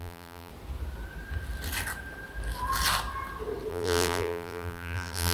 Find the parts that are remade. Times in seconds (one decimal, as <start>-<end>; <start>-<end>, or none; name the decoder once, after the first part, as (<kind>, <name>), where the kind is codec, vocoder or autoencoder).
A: 0.0-0.5 (vocoder, BigVGAN v2); 3.7-5.3